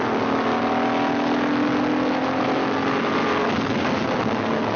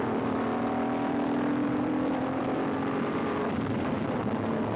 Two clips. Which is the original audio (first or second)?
first